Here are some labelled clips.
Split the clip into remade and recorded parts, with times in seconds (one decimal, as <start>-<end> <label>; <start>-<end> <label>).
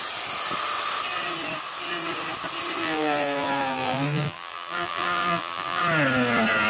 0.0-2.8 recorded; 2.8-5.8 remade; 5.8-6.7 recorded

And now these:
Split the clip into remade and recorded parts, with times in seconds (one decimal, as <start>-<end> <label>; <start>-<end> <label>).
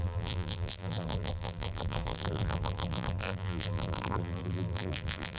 0.0-5.4 remade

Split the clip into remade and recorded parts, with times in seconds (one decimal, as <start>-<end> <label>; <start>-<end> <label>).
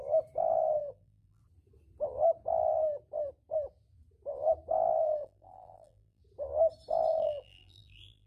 0.0-0.8 recorded; 0.8-1.4 remade; 1.4-5.0 recorded; 5.0-6.2 remade; 6.2-7.1 recorded; 7.1-8.3 remade